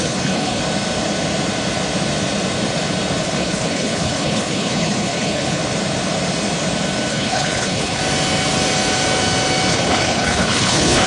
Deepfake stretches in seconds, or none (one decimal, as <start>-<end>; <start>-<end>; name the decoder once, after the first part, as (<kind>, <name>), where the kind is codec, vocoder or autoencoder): 0.0-0.6 (codec, HILCodec); 3.2-5.6; 7.1-8.0; 9.7-11.1